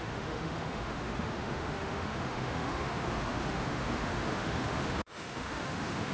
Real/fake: fake